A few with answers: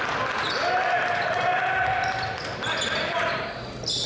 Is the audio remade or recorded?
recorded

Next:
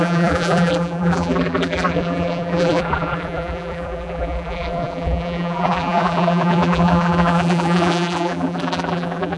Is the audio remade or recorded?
remade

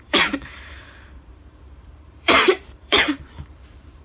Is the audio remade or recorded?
remade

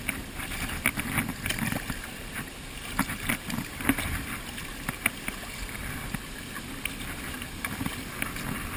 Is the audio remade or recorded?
recorded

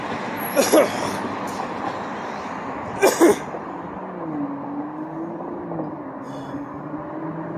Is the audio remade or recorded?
recorded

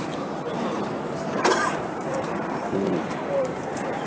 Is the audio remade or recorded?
remade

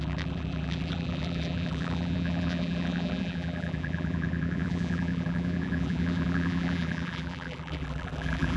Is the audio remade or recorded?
remade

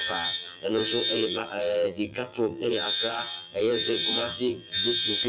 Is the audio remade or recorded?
remade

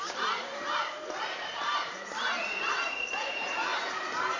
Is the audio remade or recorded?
remade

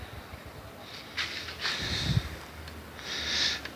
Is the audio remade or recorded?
recorded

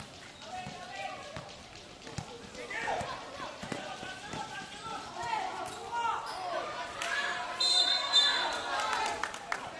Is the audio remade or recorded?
recorded